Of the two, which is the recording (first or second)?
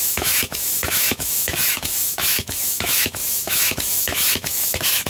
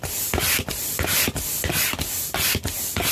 second